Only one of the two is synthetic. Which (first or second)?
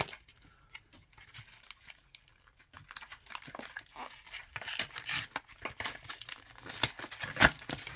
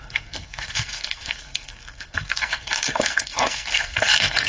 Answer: second